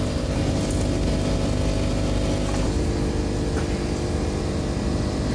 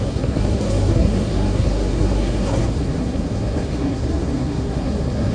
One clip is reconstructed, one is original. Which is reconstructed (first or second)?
second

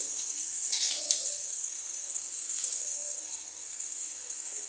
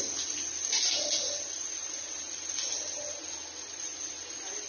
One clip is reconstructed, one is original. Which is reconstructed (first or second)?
first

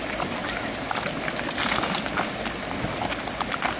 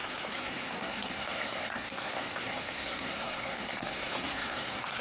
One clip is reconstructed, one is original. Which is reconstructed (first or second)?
second